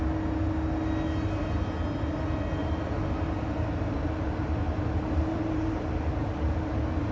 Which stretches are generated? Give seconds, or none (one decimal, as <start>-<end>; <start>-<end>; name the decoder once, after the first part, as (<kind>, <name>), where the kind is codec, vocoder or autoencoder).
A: 2.6-6.4 (vocoder, BigVGAN v2)